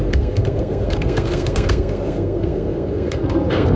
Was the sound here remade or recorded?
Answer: remade